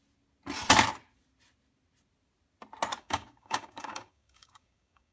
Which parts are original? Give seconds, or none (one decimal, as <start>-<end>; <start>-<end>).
0.0-3.0